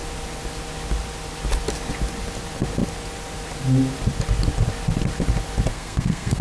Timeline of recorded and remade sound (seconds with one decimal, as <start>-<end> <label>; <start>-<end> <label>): 0.0-5.7 recorded; 5.7-6.4 remade